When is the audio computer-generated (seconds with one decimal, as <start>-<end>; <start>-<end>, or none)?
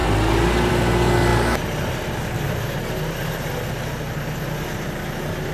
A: none